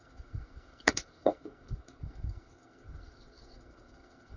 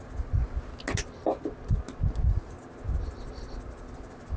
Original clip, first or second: second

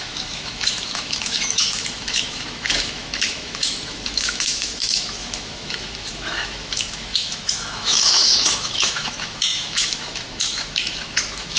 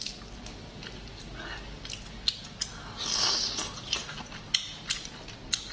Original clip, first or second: second